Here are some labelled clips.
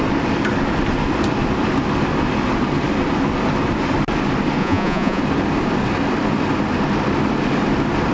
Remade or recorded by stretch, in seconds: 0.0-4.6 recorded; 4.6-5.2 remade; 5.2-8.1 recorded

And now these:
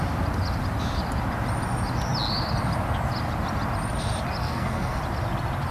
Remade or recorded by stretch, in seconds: 0.0-4.4 recorded; 4.4-5.0 remade; 5.0-5.7 recorded

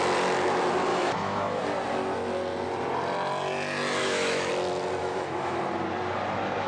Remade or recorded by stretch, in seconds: 0.0-0.9 recorded; 0.9-1.6 remade; 1.6-4.0 recorded; 4.0-4.5 remade; 4.5-5.0 recorded; 5.0-5.6 remade; 5.6-6.7 recorded

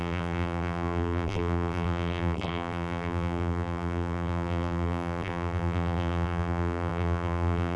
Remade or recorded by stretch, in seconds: 0.0-7.8 remade

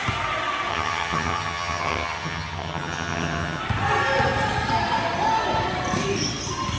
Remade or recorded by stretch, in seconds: 0.0-0.7 recorded; 0.7-3.6 remade; 3.6-6.8 recorded